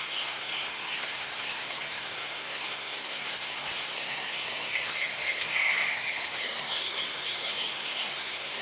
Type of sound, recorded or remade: remade